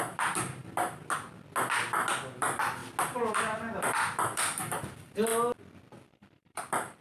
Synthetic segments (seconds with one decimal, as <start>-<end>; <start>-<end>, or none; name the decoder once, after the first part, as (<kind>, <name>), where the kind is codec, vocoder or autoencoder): 0.0-1.0 (vocoder, BigVGAN v2); 2.1-2.8; 3.3-5.3; 6.0-7.0